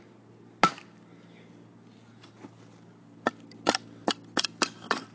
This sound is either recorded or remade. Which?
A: recorded